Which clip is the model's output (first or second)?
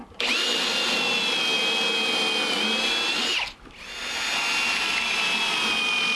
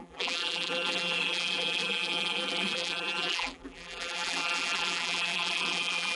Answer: second